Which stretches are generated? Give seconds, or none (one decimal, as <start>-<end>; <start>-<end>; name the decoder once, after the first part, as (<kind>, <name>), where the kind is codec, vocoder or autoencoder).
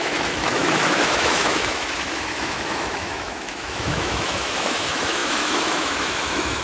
0.0-6.6 (autoencoder, DAC-VAE)